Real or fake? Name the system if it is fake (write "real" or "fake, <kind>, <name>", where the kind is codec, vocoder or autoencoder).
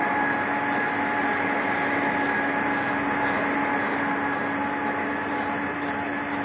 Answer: real